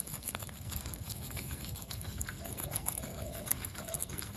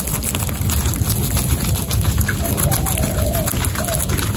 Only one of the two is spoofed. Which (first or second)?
first